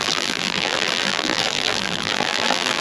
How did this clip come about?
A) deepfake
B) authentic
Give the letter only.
A